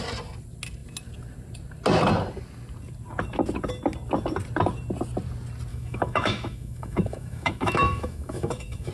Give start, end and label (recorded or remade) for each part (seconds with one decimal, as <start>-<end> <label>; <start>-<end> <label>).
0.0-5.7 recorded; 5.7-8.9 remade